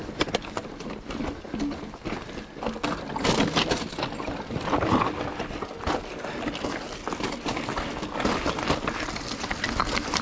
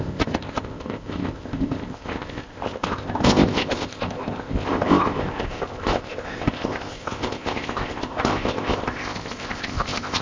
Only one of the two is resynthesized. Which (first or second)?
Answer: second